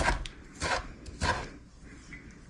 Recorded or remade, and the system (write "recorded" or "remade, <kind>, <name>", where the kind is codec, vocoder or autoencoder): recorded